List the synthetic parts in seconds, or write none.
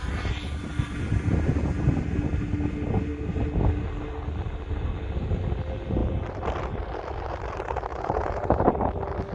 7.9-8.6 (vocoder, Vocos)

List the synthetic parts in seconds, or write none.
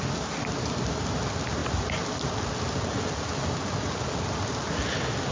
none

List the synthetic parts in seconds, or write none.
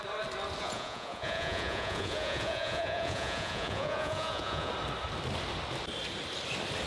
0.6-4.7 (vocoder, Vocos)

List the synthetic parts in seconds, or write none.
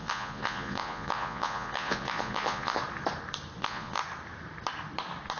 0.0-2.8 (vocoder, Vocos); 3.6-4.0